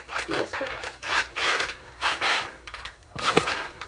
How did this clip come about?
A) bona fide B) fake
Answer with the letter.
B